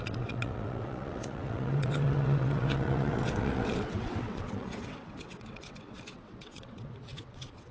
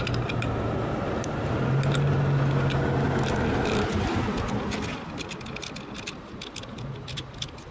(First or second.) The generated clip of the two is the first